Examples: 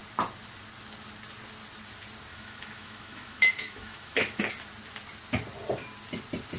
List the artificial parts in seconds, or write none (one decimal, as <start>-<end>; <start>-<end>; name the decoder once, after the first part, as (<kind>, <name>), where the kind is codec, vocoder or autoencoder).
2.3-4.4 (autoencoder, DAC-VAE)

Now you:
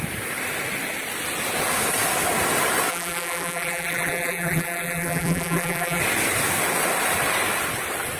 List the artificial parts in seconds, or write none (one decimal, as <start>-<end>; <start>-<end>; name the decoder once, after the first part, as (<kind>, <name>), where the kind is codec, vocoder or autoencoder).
2.9-6.0 (vocoder, BigVGAN v2)

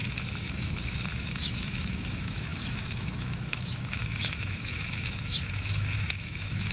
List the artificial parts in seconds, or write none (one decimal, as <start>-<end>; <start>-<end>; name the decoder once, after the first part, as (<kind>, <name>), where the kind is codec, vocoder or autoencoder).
0.0-6.7 (autoencoder, DAC-VAE)